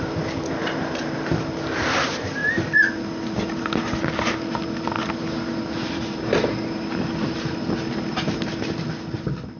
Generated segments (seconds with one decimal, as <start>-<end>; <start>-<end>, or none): none